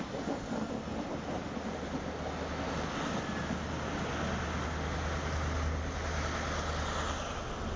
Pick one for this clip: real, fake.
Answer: real